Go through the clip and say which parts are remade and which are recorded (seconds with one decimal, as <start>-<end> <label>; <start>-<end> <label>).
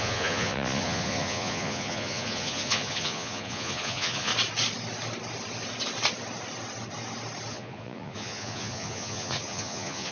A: 0.0-4.3 remade; 4.3-7.5 recorded; 7.5-10.1 remade